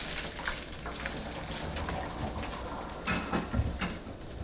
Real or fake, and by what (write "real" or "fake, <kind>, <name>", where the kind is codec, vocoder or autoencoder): real